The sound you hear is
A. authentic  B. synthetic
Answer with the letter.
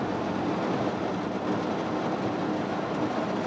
A